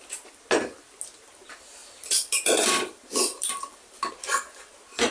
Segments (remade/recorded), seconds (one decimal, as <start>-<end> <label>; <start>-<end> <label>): 0.0-1.8 recorded; 1.8-2.5 remade; 2.5-3.2 recorded; 3.2-3.9 remade; 3.9-5.1 recorded